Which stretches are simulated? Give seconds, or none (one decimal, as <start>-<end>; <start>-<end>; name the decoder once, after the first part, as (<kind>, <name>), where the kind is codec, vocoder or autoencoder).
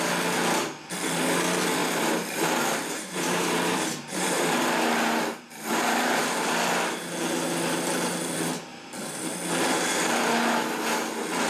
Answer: 1.8-6.2 (vocoder, BigVGAN v2); 8.7-9.3